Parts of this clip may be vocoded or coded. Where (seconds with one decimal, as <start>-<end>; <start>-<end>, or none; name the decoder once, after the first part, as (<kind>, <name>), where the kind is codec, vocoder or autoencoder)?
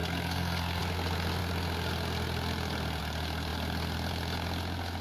0.0-0.8 (codec, SNAC)